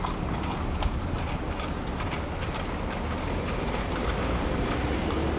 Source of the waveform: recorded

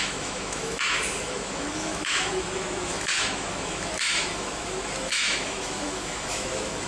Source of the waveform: remade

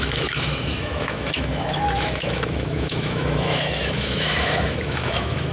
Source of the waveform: remade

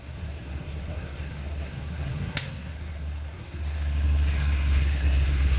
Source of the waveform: remade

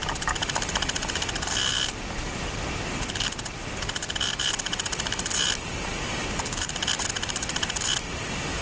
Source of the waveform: recorded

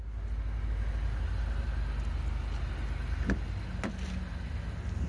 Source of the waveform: recorded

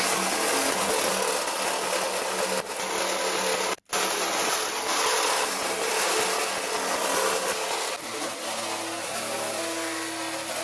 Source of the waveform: recorded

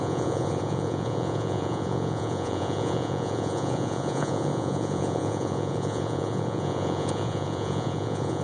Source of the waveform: remade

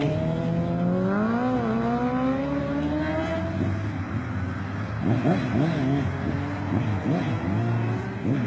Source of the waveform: recorded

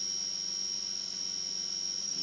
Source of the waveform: recorded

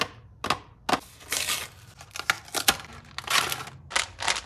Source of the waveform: recorded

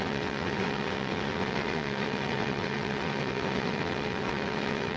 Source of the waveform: remade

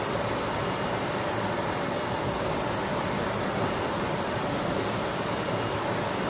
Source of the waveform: recorded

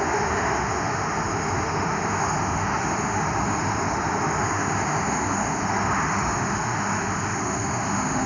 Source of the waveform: remade